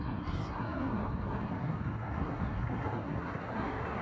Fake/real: fake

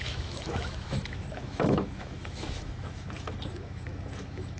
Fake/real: fake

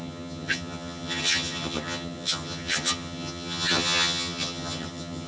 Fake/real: fake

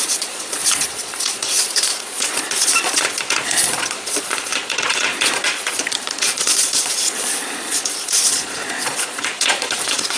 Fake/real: fake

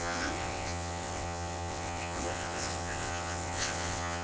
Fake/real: fake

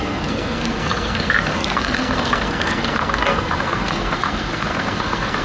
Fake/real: fake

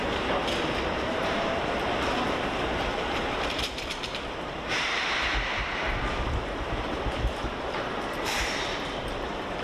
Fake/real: fake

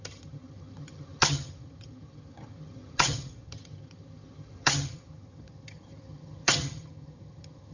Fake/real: fake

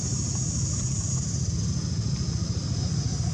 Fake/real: real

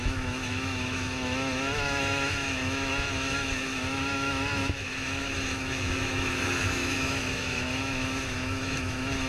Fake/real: fake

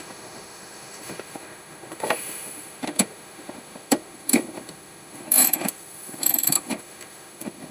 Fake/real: fake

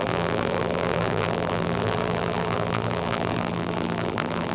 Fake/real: fake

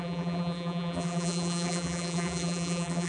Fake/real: fake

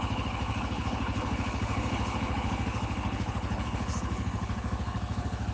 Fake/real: fake